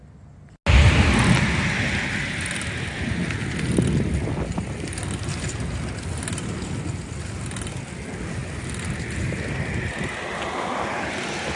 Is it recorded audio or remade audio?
recorded